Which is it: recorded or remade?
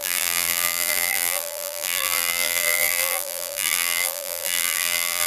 remade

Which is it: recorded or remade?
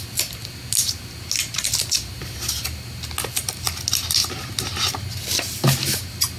recorded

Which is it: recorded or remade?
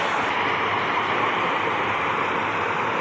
recorded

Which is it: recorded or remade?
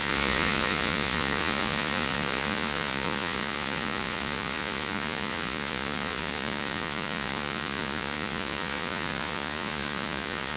remade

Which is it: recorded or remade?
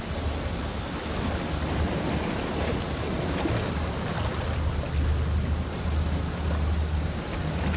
recorded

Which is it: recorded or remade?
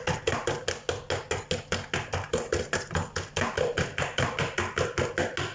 recorded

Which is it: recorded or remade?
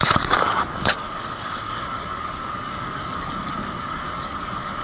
remade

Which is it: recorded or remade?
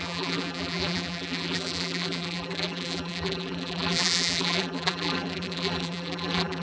remade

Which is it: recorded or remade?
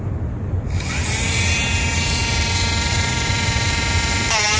remade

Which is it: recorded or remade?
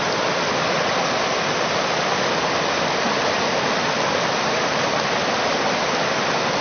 recorded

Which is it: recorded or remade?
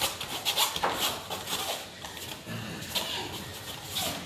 recorded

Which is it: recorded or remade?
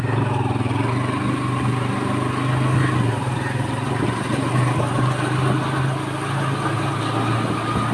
recorded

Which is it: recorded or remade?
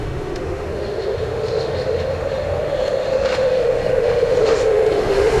remade